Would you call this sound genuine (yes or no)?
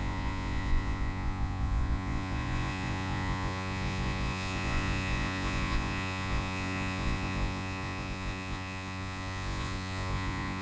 no